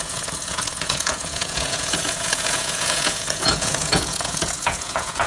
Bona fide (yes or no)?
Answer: no